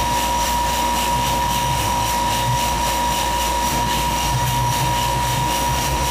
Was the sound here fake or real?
fake